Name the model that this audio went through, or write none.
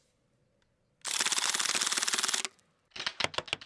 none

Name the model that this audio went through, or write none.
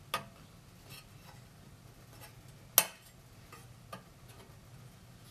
none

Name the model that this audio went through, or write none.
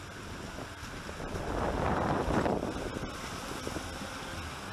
none